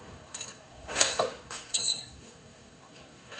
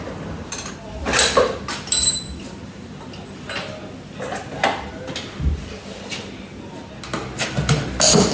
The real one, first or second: second